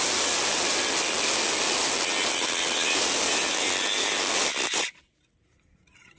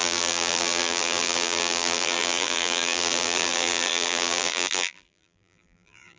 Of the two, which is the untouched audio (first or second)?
first